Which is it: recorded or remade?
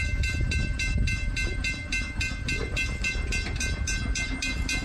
recorded